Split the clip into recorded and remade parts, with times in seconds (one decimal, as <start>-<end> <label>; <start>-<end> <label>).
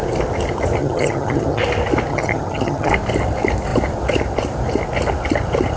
0.0-0.8 recorded; 0.8-1.6 remade; 1.6-2.1 recorded; 2.1-2.9 remade; 2.9-5.8 recorded